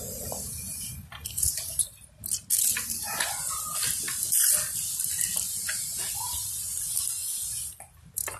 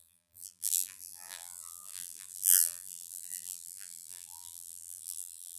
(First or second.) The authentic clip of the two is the first